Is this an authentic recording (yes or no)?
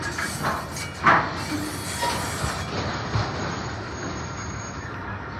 yes